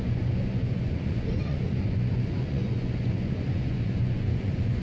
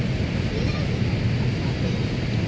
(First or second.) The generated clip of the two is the first